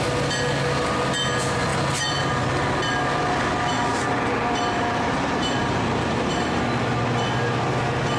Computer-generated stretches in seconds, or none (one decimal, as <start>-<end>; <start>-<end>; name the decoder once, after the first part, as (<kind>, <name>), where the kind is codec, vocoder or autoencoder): 3.9-6.6 (vocoder, BigVGAN v2)